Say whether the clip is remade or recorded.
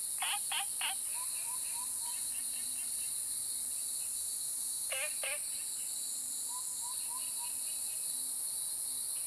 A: remade